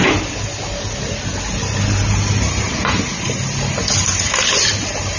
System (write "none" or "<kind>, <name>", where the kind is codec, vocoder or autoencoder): none